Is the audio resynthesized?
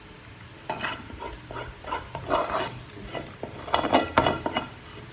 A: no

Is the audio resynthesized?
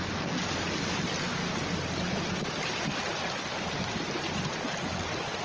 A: no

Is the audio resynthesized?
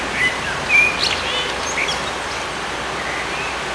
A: no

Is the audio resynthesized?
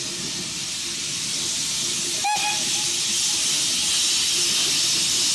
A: no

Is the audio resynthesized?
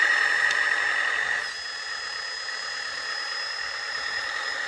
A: no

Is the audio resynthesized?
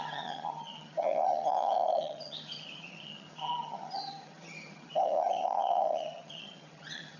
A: yes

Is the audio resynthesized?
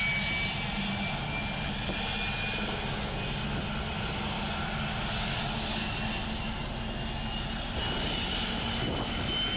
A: no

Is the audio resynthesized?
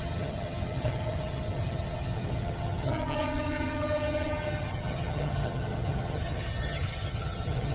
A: yes